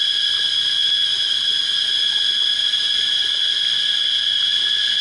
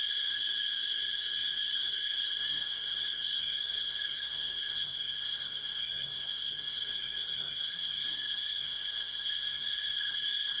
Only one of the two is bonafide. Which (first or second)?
first